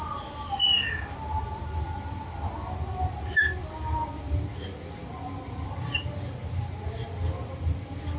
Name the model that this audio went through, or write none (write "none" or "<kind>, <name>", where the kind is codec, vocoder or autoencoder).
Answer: vocoder, BigVGAN v2